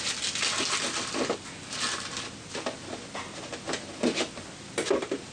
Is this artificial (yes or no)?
no